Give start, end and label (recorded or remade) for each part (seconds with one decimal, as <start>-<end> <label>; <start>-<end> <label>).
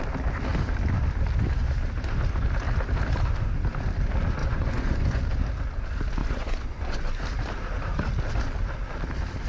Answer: 0.0-4.4 recorded; 4.4-5.2 remade; 5.2-6.2 recorded; 6.2-7.1 remade; 7.1-9.5 recorded